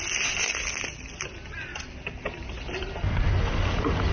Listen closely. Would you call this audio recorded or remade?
recorded